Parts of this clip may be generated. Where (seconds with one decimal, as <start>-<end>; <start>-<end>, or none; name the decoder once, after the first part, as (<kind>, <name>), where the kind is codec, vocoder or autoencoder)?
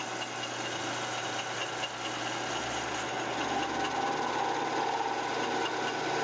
none